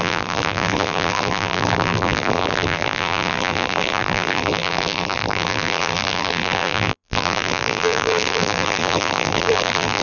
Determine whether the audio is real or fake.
fake